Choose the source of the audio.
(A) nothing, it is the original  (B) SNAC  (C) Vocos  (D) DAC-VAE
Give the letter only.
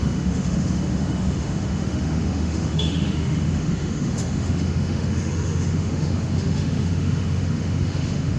D